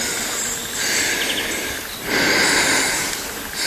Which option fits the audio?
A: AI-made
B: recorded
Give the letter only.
B